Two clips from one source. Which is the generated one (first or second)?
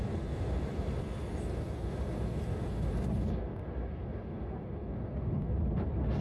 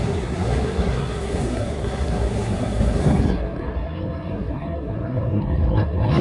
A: second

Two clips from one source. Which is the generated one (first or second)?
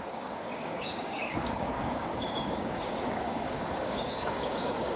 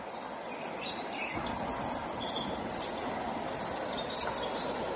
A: first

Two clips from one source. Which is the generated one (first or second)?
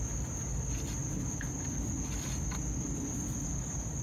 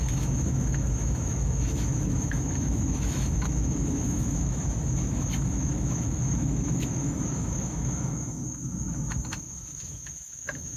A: second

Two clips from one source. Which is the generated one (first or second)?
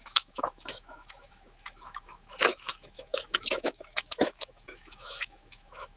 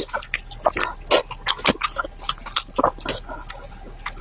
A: first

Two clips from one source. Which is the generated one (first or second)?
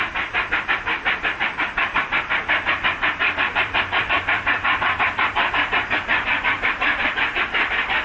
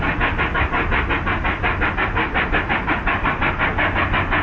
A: first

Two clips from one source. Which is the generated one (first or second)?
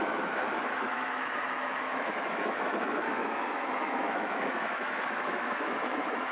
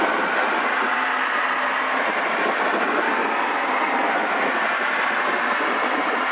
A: first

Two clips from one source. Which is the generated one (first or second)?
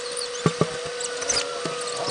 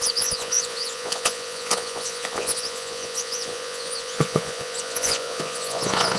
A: second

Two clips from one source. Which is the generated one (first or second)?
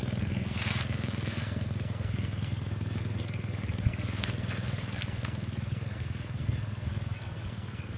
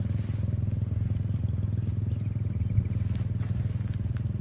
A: first